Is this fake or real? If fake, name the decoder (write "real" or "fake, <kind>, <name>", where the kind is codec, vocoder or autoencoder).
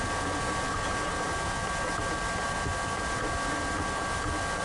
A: real